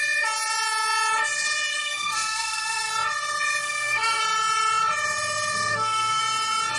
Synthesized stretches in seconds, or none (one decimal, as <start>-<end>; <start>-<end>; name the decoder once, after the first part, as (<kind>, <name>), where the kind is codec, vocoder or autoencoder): 1.7-2.9 (codec, SNAC); 3.6-4.2; 5.7-6.2